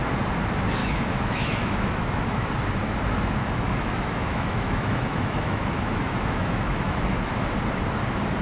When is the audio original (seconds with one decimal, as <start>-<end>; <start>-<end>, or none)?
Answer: 0.0-0.8; 2.5-3.4; 7.3-8.4